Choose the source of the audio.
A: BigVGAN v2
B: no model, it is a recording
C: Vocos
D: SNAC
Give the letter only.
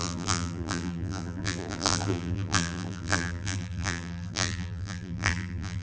A